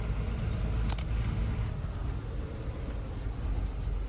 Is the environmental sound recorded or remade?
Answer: recorded